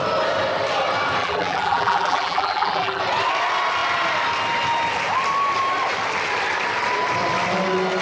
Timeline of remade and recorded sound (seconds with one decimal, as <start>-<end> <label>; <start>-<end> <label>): 0.0-1.2 recorded; 1.2-3.0 remade; 3.0-8.0 recorded